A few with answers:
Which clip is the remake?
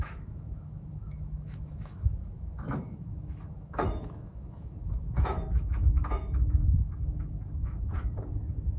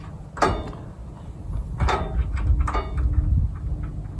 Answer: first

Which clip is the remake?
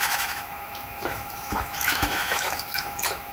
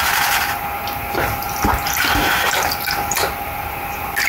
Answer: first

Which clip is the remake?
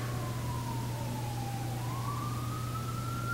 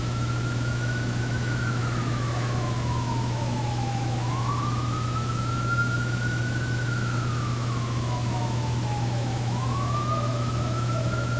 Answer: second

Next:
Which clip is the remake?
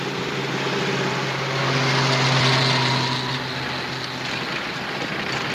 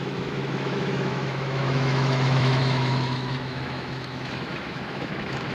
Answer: second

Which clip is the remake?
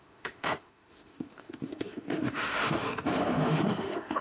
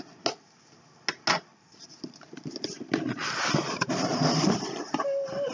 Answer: first